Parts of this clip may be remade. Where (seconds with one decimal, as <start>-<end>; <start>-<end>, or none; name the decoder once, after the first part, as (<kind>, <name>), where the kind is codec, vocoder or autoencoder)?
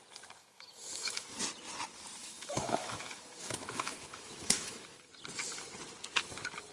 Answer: 0.4-1.4 (autoencoder, DAC-VAE); 2.2-5.1